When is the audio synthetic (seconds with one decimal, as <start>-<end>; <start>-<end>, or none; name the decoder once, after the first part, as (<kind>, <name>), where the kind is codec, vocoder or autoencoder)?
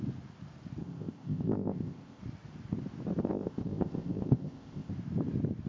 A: 0.8-2.2 (codec, ZipCodec); 3.2-4.9